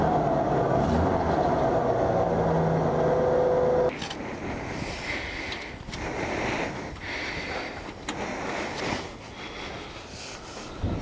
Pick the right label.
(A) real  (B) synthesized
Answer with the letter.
A